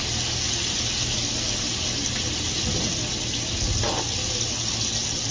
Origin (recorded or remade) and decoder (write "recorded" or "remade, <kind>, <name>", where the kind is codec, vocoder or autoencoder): recorded